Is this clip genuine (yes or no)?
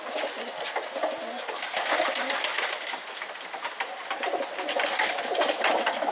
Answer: yes